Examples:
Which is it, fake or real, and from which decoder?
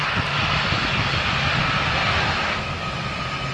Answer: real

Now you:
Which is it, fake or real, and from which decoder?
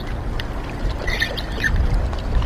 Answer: real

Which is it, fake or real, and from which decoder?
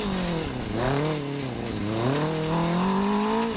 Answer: real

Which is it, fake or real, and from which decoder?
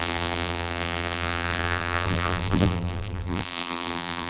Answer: fake, vocoder, BigVGAN v2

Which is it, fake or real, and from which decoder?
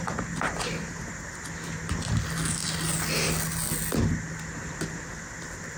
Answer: real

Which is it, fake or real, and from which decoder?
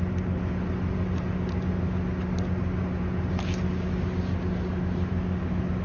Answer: real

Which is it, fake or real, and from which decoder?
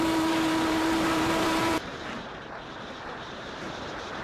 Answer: fake, vocoder, BigVGAN v2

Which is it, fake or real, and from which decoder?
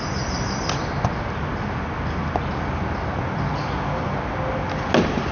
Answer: real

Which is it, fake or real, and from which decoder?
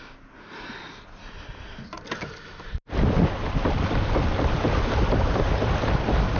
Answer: real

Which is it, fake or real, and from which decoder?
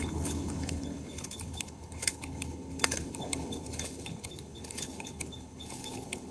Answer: fake, codec, HILCodec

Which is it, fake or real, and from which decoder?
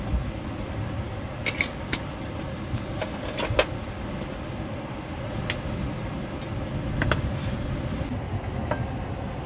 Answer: real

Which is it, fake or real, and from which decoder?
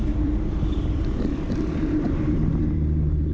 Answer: fake, vocoder, BigVGAN v2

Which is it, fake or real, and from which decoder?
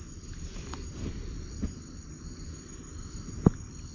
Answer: real